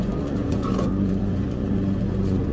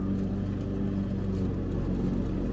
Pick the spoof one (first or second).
first